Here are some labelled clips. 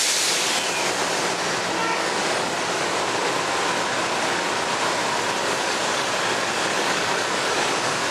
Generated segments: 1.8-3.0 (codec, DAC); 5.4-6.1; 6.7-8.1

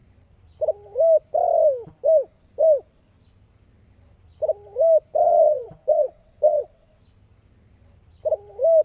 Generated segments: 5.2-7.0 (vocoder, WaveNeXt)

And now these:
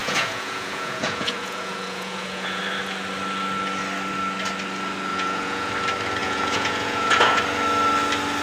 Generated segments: 0.0-2.6 (vocoder, Vocos); 5.1-5.7; 6.2-7.4